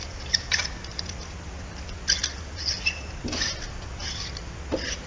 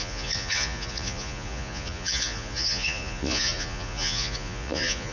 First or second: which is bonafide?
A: first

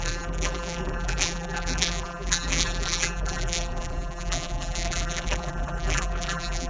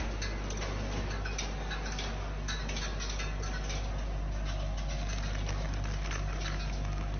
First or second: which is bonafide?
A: second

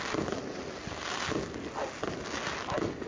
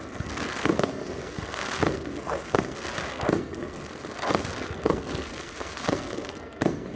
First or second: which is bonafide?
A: first